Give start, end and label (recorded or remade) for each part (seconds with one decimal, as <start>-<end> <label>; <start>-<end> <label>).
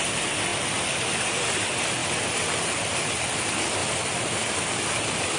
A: 0.0-5.4 recorded